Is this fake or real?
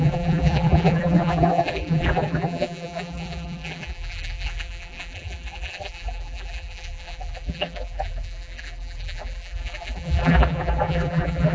fake